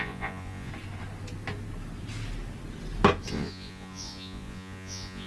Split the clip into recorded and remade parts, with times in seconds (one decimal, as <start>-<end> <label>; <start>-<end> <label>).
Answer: 0.0-0.7 remade; 0.7-3.3 recorded; 3.3-5.3 remade